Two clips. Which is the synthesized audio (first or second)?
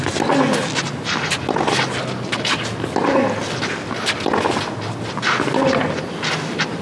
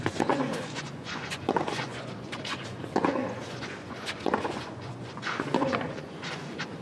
second